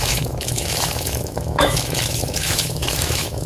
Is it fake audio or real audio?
fake